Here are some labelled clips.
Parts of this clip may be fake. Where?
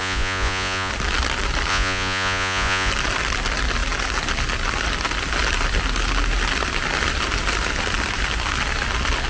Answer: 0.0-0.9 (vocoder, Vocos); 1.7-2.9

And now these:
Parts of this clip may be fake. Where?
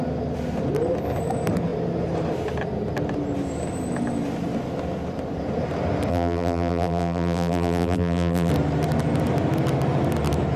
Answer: 6.1-8.5 (vocoder, BigVGAN v2)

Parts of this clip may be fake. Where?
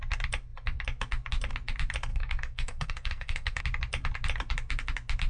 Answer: 2.1-3.6 (codec, SNAC)